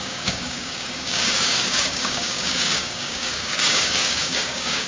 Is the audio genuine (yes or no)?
no